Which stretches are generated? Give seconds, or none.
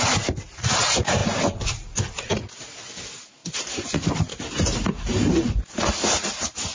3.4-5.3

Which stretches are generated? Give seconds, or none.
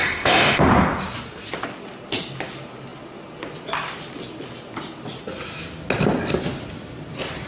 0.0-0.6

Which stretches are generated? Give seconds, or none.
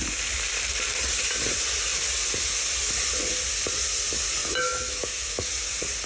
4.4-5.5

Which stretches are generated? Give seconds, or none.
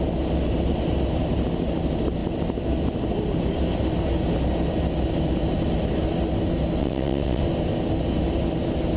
6.8-7.4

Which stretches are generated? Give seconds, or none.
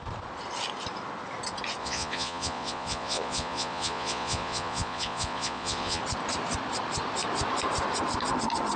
1.8-6.0